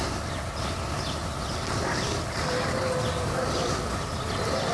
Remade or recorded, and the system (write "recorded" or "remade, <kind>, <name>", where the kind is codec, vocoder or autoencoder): recorded